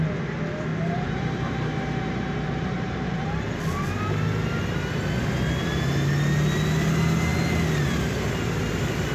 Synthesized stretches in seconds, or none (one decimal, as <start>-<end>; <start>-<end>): 0.7-3.2